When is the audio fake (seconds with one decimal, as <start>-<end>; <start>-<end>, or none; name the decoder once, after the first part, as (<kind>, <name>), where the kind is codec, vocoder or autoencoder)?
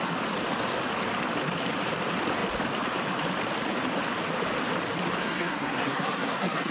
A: 5.2-6.7 (codec, SNAC)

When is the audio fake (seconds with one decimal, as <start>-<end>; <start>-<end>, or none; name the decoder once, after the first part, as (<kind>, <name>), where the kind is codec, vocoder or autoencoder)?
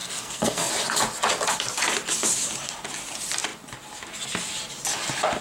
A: 0.0-0.7 (codec, SNAC)